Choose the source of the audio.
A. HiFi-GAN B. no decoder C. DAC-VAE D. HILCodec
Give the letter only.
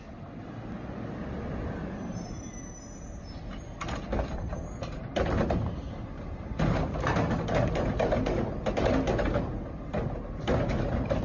B